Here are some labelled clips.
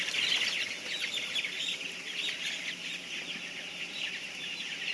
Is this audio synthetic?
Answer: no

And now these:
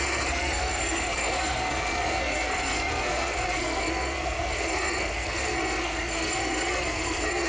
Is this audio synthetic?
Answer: yes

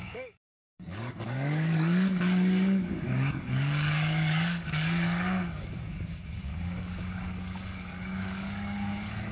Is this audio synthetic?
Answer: yes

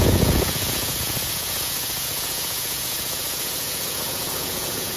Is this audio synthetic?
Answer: yes